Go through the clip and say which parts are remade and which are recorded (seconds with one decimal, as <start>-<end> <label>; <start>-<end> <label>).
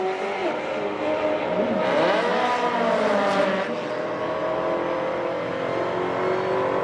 0.0-0.4 recorded; 0.4-1.5 remade; 1.5-6.8 recorded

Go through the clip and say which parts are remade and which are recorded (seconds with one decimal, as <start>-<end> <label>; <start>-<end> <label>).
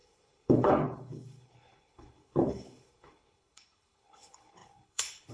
0.0-5.3 remade